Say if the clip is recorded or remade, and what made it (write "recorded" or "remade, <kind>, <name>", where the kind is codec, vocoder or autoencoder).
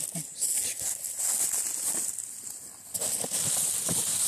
recorded